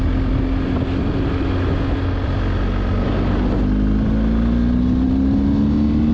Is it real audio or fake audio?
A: real